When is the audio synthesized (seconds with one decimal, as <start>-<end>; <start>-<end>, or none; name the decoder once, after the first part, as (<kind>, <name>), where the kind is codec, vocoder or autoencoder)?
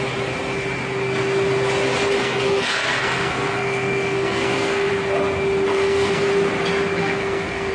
2.2-4.9 (codec, SNAC); 5.7-6.3; 7.0-7.7